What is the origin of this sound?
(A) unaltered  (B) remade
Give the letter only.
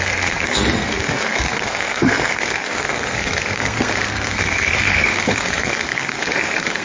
B